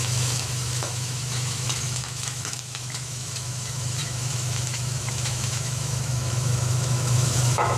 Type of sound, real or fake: fake